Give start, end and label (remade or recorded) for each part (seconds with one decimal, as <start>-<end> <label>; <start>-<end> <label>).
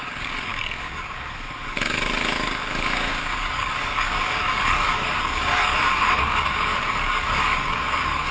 0.0-8.3 remade